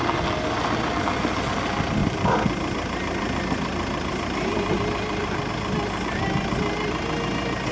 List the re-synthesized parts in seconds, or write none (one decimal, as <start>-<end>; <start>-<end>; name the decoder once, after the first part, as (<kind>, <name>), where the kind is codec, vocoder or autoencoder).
2.0-5.5 (vocoder, BigVGAN v2)